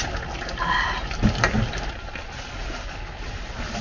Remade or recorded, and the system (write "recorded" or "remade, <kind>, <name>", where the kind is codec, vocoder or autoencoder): recorded